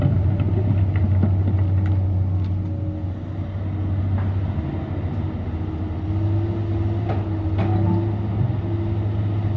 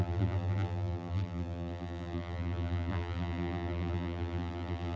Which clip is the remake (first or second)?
second